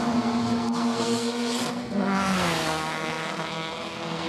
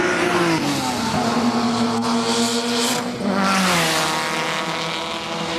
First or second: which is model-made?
first